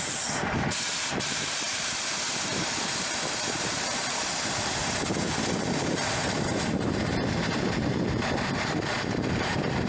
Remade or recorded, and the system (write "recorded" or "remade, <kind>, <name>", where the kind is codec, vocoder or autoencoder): remade, vocoder, BigVGAN v2